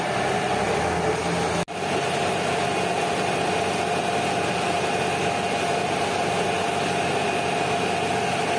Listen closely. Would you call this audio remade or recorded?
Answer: recorded